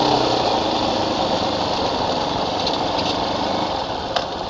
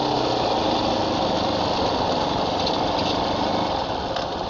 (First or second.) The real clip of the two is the second